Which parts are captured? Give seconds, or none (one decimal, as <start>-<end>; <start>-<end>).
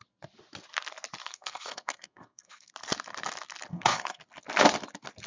0.0-1.2; 2.7-3.7; 4.2-5.3